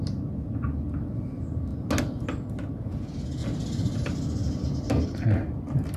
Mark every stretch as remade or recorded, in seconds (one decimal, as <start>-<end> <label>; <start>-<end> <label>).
0.0-6.0 recorded